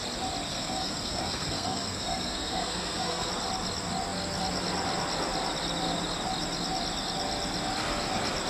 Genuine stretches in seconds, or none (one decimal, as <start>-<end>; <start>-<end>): 0.0-0.5; 3.3-8.5